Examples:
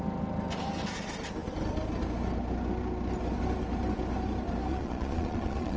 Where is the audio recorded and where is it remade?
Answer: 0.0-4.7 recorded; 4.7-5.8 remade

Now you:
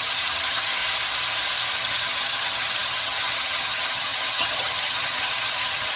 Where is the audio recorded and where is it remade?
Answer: 0.0-0.8 remade; 0.8-1.7 recorded; 1.7-6.0 remade

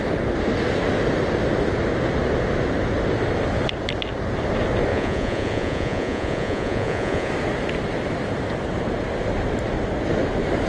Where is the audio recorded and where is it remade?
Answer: 0.0-4.9 recorded; 4.9-7.3 remade; 7.3-10.7 recorded

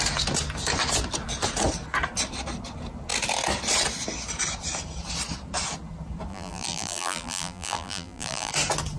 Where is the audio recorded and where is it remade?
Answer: 0.0-6.3 recorded; 6.3-8.5 remade; 8.5-9.0 recorded

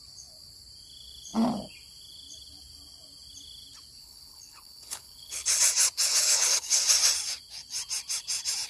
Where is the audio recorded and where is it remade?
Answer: 0.0-4.0 recorded; 4.0-5.6 remade; 5.6-6.1 recorded; 6.1-6.8 remade; 6.8-8.7 recorded

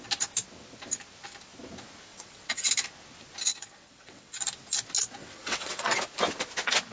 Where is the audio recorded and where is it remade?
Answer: 0.0-2.1 recorded; 2.1-2.7 remade; 2.7-3.5 recorded; 3.5-4.4 remade; 4.4-5.2 recorded; 5.2-6.0 remade; 6.0-6.9 recorded

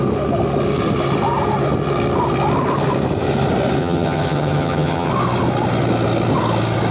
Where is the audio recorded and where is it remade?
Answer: 0.0-3.8 recorded; 3.8-5.1 remade; 5.1-6.9 recorded